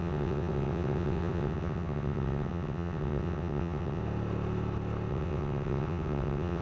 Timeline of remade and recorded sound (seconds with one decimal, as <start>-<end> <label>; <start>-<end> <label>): 0.0-4.0 remade; 4.0-5.1 recorded; 5.1-6.6 remade